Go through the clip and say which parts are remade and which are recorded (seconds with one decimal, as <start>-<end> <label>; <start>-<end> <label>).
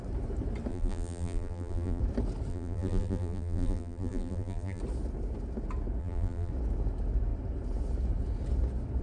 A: 0.0-0.7 recorded; 0.7-2.0 remade; 2.0-2.5 recorded; 2.5-4.8 remade; 4.8-6.0 recorded; 6.0-6.5 remade; 6.5-9.0 recorded